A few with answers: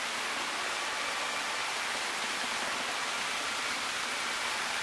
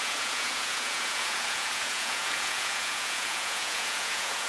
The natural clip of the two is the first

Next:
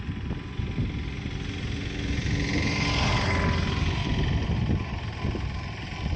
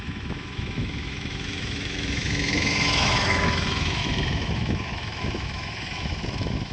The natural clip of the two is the first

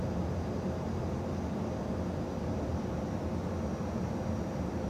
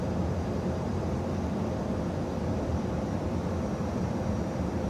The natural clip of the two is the first